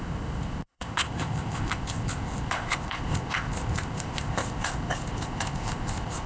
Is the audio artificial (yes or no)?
yes